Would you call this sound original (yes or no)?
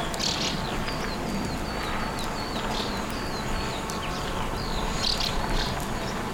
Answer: yes